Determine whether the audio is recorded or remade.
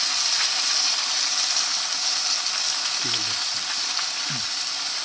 recorded